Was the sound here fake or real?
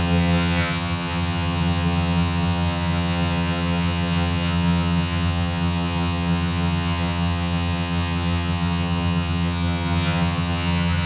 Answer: fake